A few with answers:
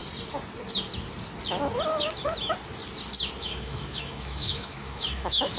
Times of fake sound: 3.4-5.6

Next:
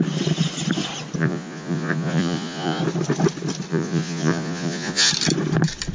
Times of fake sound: 1.2-2.8; 3.7-5.1

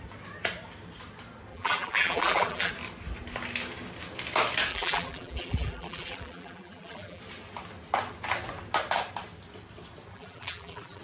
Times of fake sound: 1.5-2.7; 4.7-7.2; 10.1-11.0